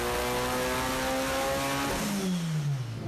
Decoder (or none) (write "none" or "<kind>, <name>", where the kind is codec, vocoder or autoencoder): none